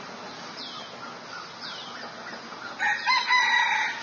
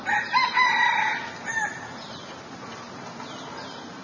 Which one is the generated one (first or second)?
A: second